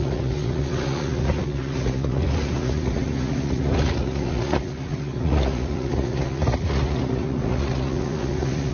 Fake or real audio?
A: fake